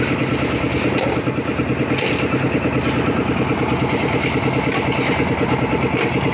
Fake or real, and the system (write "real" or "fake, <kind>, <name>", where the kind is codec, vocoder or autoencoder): real